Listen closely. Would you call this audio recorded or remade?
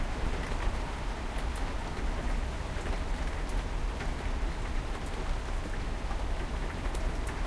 recorded